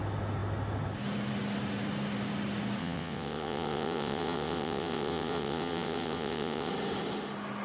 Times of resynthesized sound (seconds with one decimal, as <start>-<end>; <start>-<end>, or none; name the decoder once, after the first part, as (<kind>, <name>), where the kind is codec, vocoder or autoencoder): 2.8-6.7 (vocoder, WaveNeXt)